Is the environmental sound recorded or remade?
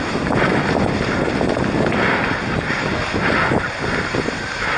recorded